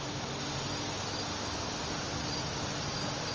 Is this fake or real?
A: real